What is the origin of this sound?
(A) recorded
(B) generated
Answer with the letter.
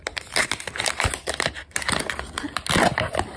A